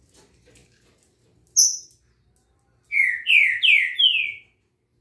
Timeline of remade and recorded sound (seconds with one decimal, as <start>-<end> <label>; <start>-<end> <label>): 0.0-5.0 recorded